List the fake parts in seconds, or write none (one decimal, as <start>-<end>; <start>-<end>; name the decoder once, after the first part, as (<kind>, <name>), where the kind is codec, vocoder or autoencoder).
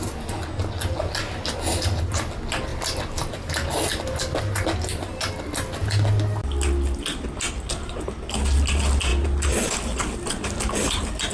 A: none